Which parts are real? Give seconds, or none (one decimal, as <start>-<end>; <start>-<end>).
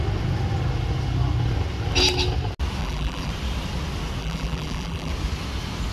0.0-2.8; 3.3-4.2; 5.1-5.9